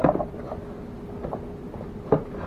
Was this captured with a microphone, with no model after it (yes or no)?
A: yes